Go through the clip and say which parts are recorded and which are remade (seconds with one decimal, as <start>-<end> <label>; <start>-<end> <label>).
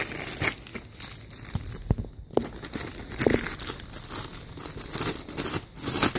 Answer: 0.0-6.2 recorded